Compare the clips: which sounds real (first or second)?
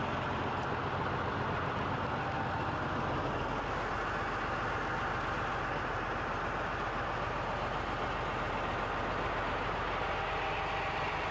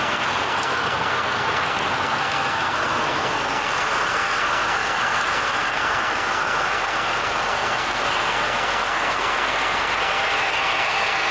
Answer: first